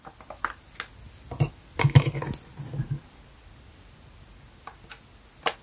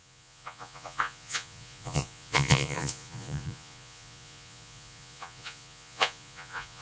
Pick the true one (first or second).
first